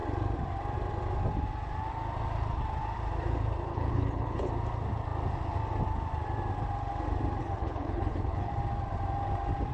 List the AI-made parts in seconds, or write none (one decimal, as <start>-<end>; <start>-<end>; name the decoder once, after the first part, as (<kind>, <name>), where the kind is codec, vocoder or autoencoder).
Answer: 3.7-4.5 (codec, HILCodec); 7.4-8.5